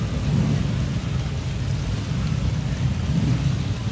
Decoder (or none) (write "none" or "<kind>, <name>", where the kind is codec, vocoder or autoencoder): none